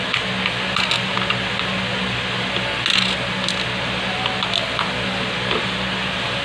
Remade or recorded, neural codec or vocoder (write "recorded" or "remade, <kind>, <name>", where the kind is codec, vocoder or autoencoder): recorded